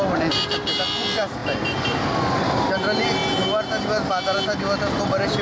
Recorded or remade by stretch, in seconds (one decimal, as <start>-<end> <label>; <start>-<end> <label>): 0.0-5.4 recorded